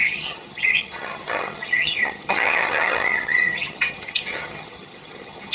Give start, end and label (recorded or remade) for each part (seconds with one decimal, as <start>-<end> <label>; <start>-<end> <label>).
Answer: 0.0-5.5 remade